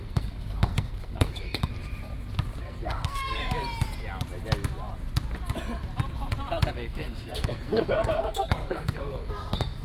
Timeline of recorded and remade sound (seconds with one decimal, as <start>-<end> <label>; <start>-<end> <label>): 0.0-1.7 remade; 1.7-2.6 recorded; 2.6-3.4 remade; 3.4-6.7 recorded; 6.7-9.8 remade